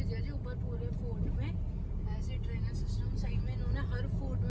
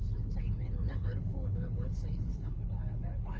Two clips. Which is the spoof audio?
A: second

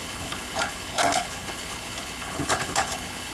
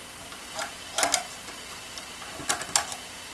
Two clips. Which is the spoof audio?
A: first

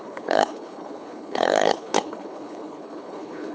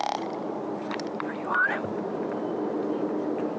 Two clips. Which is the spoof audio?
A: first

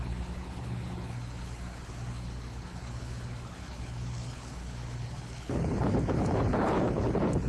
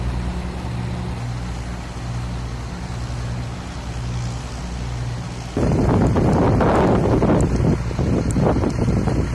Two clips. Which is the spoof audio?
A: first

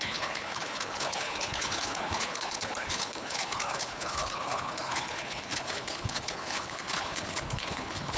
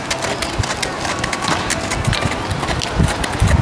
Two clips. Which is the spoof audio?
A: first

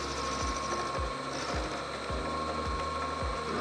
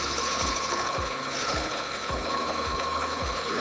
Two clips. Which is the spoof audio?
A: second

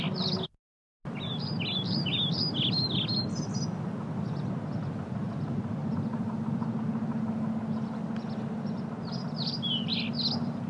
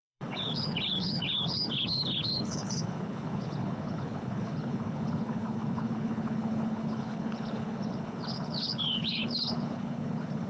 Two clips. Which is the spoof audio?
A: second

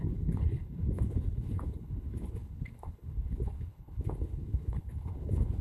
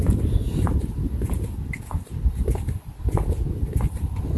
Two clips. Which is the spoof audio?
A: first